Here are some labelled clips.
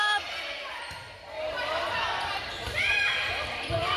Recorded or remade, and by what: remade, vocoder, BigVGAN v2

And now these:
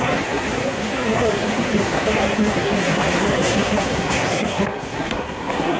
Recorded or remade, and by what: remade, codec, SNAC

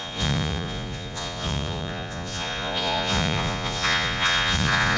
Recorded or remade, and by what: remade, vocoder, Vocos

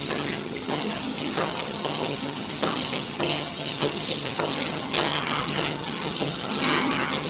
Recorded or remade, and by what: remade, vocoder, HiFi-GAN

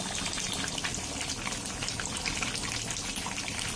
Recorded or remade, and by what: recorded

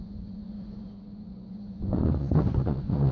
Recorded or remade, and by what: remade, vocoder, Vocos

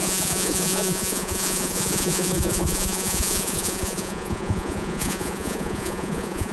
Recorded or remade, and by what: remade, vocoder, Vocos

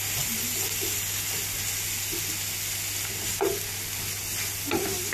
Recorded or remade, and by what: recorded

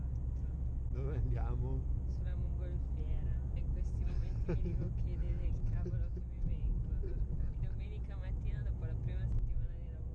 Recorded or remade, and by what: recorded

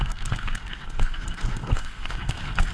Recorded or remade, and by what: remade, codec, SNAC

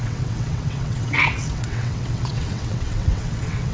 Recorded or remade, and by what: remade, vocoder, WaveNeXt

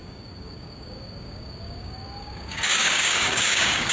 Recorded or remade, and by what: remade, codec, DAC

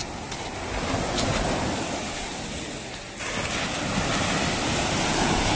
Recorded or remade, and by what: recorded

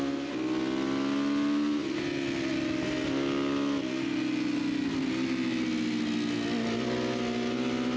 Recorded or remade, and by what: recorded